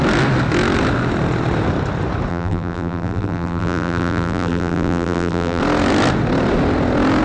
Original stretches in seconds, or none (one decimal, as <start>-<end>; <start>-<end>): 0.0-2.3; 5.6-7.2